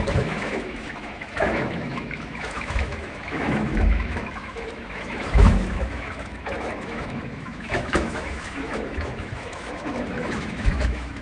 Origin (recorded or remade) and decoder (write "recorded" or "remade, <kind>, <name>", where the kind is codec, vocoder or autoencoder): remade, autoencoder, DAC-VAE